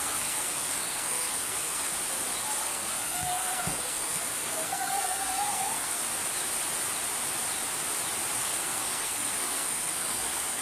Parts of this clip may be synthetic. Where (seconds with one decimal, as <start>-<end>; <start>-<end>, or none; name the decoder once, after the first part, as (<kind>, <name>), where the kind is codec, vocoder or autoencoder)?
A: 0.0-1.9 (codec, SNAC); 2.6-6.0; 8.4-10.6